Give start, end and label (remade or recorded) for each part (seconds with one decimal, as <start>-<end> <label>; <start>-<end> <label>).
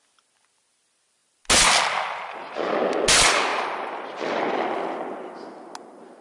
0.0-6.2 recorded